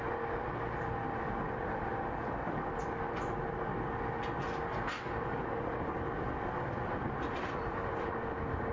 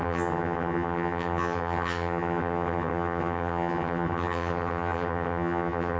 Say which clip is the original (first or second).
first